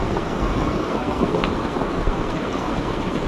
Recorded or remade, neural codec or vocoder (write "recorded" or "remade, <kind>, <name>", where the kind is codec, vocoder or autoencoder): remade, codec, SNAC